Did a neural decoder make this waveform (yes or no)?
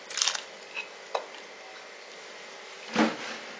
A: no